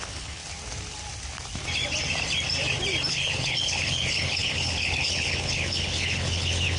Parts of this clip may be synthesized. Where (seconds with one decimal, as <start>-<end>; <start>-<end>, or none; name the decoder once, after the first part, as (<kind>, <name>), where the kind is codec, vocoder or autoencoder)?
0.0-0.4 (codec, HILCodec); 3.1-6.8